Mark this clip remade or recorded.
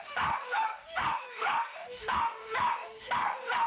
remade